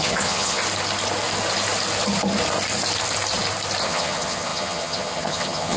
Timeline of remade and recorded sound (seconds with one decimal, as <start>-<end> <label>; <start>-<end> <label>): 0.0-0.6 remade; 0.6-3.8 recorded; 3.8-5.8 remade